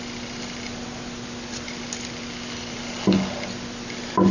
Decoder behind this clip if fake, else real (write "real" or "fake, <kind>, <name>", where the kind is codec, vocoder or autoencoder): real